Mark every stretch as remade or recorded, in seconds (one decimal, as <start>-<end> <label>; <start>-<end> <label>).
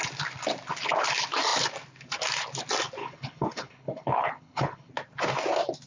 0.0-3.0 recorded; 3.0-4.9 remade; 4.9-5.9 recorded